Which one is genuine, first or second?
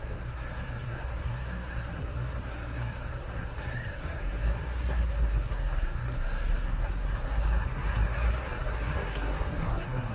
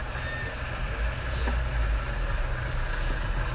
second